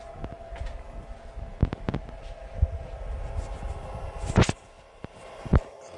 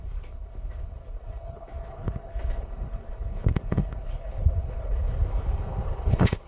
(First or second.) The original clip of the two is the first